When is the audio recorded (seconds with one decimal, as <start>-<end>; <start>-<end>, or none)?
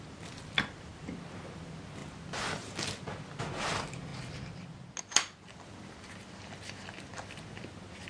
0.0-8.1